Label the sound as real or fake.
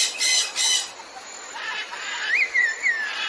real